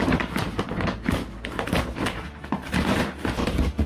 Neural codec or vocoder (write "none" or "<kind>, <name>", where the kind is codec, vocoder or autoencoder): none